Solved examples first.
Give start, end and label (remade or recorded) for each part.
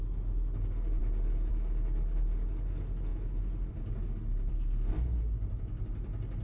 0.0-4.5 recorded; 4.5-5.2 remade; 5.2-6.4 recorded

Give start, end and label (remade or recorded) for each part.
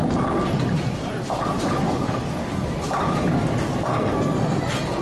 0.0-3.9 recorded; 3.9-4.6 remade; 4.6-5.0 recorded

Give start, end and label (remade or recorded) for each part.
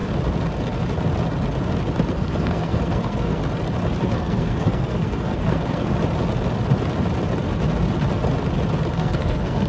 0.0-2.1 recorded; 2.1-3.4 remade; 3.4-4.0 recorded; 4.0-5.9 remade; 5.9-8.9 recorded; 8.9-9.7 remade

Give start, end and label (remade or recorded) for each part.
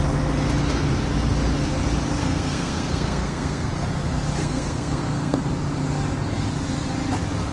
0.0-2.2 recorded; 2.2-3.7 remade; 3.7-4.4 recorded; 4.4-5.4 remade; 5.4-7.5 recorded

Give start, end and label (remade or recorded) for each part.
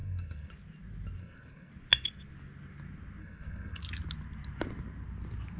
0.0-0.5 remade; 0.5-1.2 recorded; 1.2-1.7 remade; 1.7-3.2 recorded; 3.2-3.8 remade; 3.8-5.6 recorded